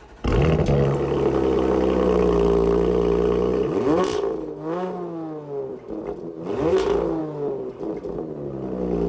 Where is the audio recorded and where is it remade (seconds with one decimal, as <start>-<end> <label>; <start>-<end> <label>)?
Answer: 0.0-9.1 recorded